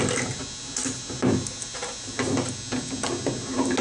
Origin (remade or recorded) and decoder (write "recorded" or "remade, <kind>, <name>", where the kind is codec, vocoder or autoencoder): recorded